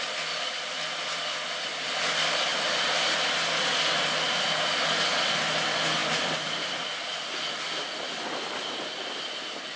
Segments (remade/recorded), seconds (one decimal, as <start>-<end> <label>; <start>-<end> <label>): 0.0-9.8 recorded